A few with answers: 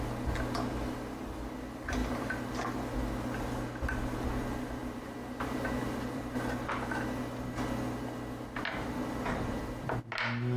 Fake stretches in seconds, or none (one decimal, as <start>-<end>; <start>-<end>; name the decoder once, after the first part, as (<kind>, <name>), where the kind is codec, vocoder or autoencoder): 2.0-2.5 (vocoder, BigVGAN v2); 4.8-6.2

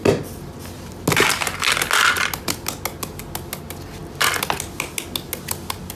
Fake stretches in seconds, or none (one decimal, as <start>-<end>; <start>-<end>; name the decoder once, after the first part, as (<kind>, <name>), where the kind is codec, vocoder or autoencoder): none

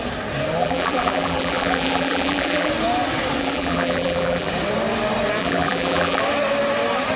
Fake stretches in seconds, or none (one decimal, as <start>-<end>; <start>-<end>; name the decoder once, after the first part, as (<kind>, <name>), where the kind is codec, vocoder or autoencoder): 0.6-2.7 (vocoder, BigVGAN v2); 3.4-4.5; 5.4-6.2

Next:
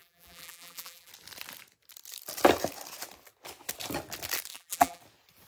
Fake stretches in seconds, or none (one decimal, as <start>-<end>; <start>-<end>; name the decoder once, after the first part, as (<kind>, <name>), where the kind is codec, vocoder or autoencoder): 0.0-1.1 (vocoder, BigVGAN v2); 4.5-5.0

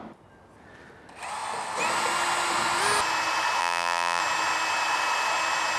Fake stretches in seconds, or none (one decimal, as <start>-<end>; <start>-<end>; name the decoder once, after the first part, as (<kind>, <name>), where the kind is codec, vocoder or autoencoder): 3.6-4.2 (vocoder, BigVGAN v2)

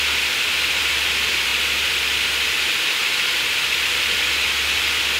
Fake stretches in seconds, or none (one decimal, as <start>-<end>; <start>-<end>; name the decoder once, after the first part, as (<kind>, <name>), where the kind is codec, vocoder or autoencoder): 0.0-5.2 (vocoder, BigVGAN v2)

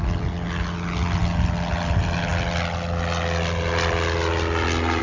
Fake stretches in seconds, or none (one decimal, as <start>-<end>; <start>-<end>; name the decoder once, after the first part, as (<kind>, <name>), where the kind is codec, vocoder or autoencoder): none

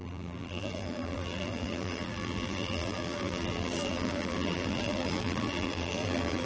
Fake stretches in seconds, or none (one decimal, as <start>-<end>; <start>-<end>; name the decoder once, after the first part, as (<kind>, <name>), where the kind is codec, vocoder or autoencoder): 0.0-6.5 (vocoder, BigVGAN v2)